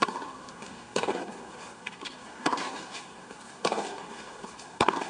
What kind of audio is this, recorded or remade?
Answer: remade